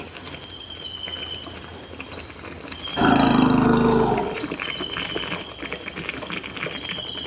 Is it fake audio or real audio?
real